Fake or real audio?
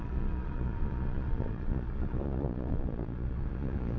fake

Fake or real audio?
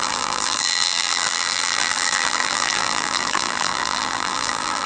fake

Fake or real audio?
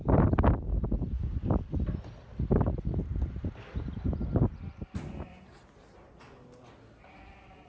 real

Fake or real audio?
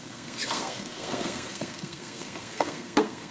fake